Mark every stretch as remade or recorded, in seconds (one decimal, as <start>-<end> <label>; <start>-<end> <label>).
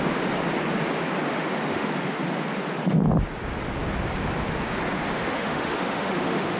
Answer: 0.0-1.3 recorded; 1.3-1.9 remade; 1.9-5.2 recorded; 5.2-6.6 remade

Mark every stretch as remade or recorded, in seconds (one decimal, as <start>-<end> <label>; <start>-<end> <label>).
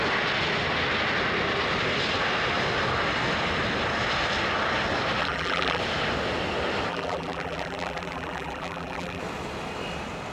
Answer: 0.0-5.2 recorded; 5.2-5.8 remade; 5.8-6.9 recorded; 6.9-9.2 remade; 9.2-10.3 recorded